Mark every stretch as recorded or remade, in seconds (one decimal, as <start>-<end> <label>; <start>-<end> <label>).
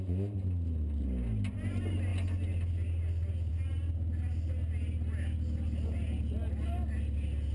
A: 0.0-7.5 recorded